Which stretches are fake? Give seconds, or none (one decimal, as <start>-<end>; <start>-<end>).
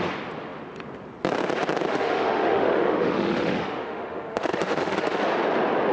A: 1.9-5.2